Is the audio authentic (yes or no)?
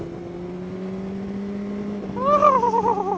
yes